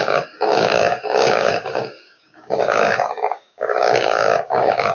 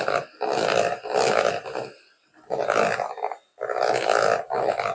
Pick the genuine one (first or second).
second